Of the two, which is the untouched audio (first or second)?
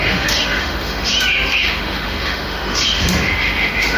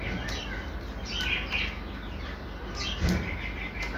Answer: second